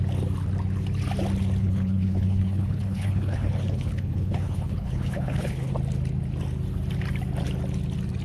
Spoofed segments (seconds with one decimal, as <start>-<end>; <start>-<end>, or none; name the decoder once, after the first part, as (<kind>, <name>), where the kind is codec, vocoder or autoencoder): 1.6-5.7 (codec, HILCodec)

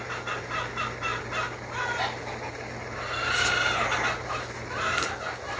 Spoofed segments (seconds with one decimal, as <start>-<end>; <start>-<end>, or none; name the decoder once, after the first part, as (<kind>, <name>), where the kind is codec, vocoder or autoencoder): none

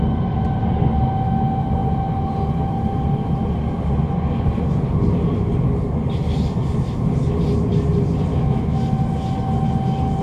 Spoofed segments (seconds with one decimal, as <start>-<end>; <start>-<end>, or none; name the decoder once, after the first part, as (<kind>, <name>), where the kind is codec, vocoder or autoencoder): 8.3-8.9 (autoencoder, DAC-VAE)

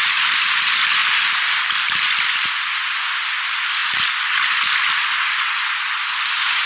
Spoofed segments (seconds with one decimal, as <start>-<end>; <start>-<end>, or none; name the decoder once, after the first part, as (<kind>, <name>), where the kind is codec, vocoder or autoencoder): none

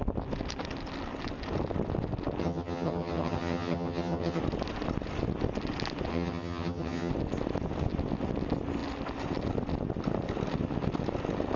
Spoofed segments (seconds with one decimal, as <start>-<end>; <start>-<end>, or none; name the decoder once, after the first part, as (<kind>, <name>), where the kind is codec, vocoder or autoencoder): 2.4-4.4 (vocoder, HiFi-GAN); 6.1-7.1

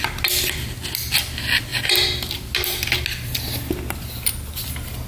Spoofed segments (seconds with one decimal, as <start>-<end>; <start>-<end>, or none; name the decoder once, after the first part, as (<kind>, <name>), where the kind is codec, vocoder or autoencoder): none